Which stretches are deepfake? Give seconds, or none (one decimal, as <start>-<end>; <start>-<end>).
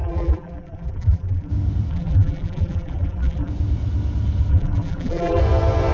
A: 0.0-1.5; 1.9-3.5; 4.5-5.4